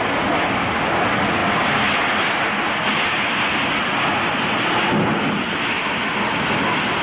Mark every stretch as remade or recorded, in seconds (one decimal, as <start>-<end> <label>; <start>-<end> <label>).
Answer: 0.0-7.0 recorded